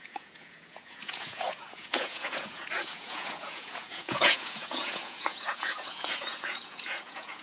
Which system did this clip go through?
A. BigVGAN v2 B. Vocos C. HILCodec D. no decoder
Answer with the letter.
B